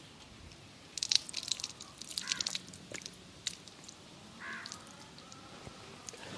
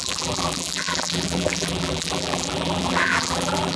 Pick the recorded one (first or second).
first